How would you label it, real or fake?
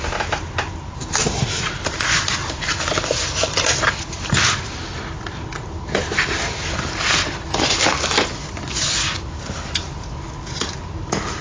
real